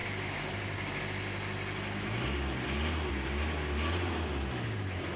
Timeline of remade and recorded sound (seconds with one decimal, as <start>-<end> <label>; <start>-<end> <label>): 0.0-5.2 recorded

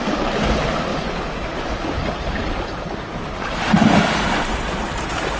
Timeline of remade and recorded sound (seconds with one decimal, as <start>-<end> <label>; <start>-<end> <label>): 0.0-5.4 recorded

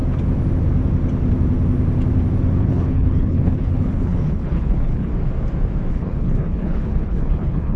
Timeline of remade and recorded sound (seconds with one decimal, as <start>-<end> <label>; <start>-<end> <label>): 0.0-2.6 recorded; 2.6-5.1 remade; 5.1-5.9 recorded; 5.9-7.8 remade

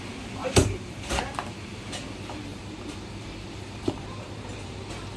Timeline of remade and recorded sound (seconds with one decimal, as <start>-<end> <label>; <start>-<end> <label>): 0.0-0.4 recorded; 0.4-1.2 remade; 1.2-2.5 recorded; 2.5-4.8 remade; 4.8-5.2 recorded